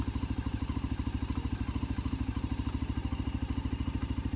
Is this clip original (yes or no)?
yes